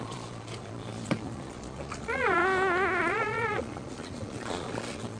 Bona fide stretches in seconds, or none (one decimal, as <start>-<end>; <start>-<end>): 2.4-3.0